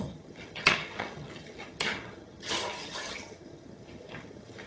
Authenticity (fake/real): fake